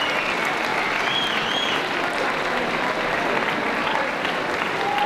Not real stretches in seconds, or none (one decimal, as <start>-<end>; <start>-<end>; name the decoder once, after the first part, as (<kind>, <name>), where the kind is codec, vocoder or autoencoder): 0.7-1.7 (vocoder, BigVGAN v2)